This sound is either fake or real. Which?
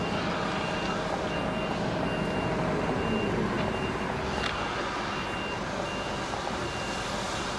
real